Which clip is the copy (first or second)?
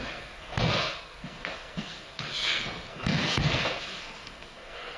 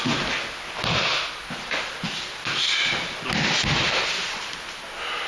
first